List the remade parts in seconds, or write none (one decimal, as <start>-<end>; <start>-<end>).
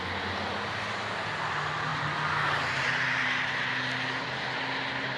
none